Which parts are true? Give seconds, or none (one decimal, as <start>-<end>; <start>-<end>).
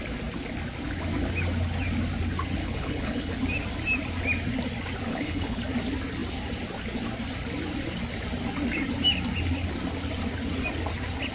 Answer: 0.0-2.6; 3.3-5.1; 5.6-11.3